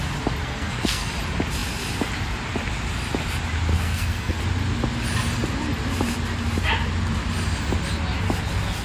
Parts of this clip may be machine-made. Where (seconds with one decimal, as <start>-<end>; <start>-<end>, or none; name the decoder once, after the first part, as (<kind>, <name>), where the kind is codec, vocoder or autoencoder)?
0.4-1.1 (codec, SNAC); 3.7-4.4